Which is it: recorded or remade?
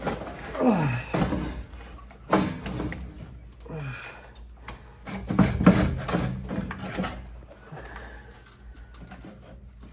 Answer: recorded